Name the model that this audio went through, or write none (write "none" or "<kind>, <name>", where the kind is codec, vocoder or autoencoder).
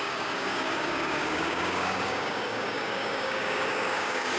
codec, DAC